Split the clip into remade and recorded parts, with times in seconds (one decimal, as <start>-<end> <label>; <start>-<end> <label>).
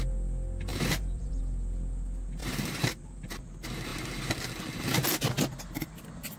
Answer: 0.0-0.7 recorded; 0.7-1.4 remade; 1.4-2.4 recorded; 2.4-3.5 remade; 3.5-6.4 recorded